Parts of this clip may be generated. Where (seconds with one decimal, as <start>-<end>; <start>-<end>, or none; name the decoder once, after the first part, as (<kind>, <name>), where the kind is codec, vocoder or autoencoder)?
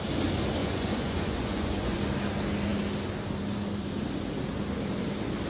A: 0.6-2.0 (vocoder, Vocos)